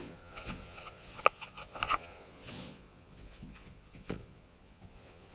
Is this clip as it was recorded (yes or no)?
no